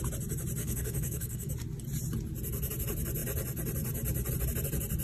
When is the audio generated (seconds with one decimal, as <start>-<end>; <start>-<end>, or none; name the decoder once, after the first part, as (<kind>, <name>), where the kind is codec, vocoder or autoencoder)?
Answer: 0.6-1.5 (codec, SNAC)